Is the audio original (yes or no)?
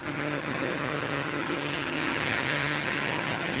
no